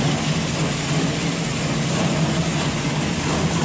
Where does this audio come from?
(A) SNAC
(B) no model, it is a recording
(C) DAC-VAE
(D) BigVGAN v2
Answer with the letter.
B